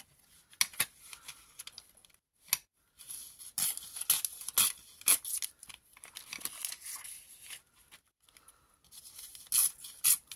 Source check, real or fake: real